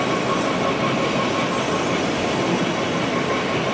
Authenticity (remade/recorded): recorded